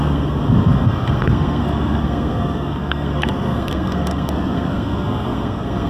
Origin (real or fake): fake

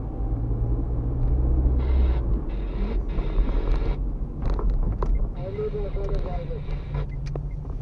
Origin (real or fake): real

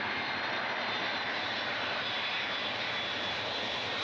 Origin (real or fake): real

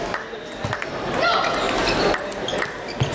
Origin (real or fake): real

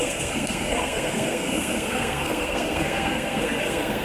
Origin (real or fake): fake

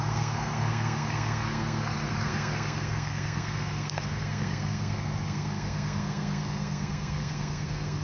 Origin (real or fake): fake